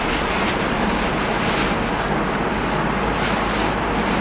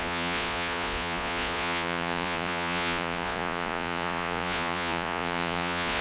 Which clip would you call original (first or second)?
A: first